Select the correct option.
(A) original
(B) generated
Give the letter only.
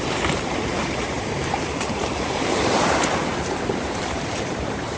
B